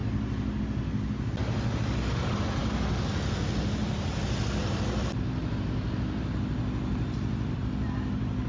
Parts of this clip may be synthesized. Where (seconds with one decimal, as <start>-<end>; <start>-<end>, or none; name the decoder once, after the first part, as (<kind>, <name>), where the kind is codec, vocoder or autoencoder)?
none